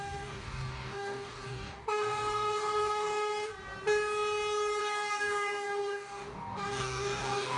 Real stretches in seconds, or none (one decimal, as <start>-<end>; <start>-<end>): 3.5-4.8